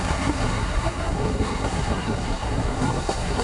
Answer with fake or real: fake